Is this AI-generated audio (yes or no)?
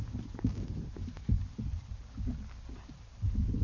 no